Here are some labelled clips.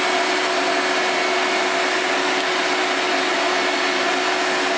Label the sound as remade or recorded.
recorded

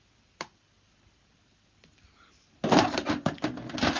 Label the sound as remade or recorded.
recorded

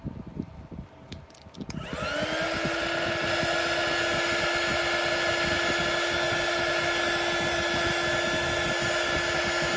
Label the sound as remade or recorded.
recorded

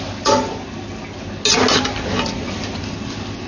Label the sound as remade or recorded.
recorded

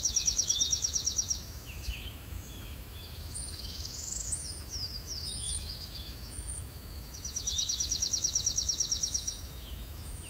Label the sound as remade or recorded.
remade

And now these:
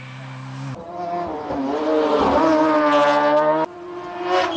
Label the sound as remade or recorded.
recorded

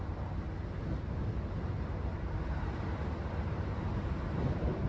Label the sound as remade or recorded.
recorded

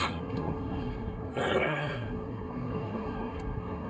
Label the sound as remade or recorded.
remade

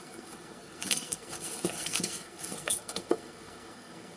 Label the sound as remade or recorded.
remade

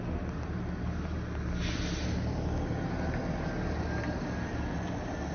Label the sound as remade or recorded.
recorded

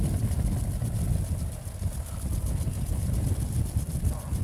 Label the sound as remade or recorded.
recorded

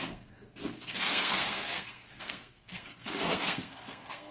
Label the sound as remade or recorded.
remade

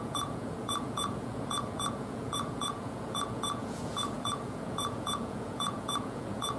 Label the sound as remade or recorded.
remade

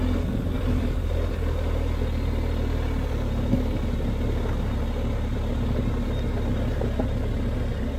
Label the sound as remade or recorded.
recorded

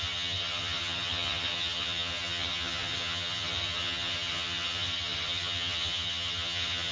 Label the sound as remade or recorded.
remade